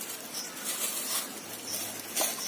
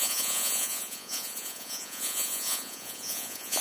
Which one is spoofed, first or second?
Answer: second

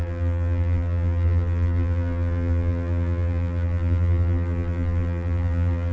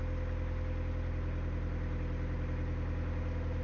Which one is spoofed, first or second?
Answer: first